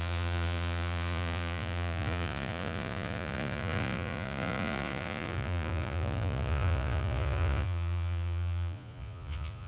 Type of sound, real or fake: fake